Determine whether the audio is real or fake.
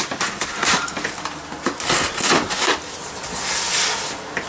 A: real